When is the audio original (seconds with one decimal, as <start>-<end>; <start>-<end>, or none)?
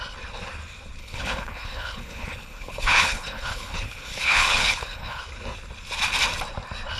0.0-1.0; 5.2-7.0